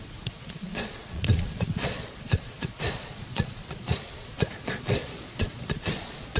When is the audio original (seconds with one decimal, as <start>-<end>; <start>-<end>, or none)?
none